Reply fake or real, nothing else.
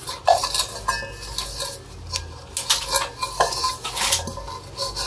real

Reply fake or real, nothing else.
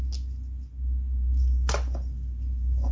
real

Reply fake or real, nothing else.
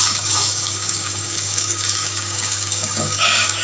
fake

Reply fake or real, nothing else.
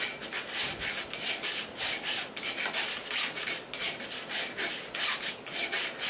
real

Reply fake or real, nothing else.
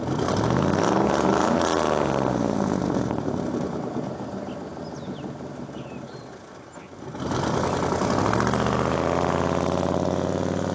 real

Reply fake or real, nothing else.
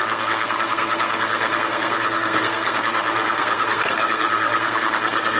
fake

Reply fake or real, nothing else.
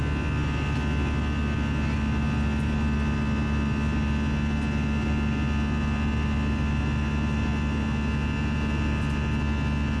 real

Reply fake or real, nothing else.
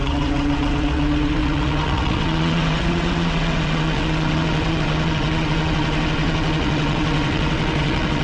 fake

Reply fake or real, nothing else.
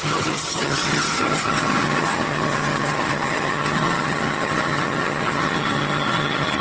fake